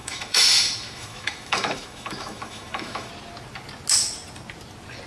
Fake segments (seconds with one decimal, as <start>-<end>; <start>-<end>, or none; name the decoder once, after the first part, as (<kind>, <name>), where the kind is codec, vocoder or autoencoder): 0.0-3.1 (autoencoder, DAC-VAE)